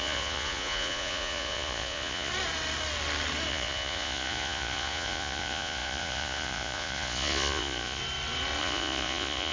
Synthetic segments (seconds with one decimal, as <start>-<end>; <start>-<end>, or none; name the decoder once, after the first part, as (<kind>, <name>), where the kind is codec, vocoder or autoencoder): 0.0-2.3 (vocoder, Vocos); 3.5-8.0; 8.6-9.5